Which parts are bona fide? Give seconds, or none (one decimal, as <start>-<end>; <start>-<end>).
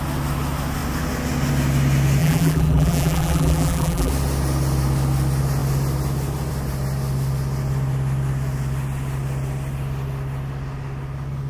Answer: 0.0-2.2; 4.1-11.5